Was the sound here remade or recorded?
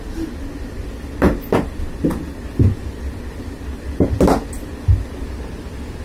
recorded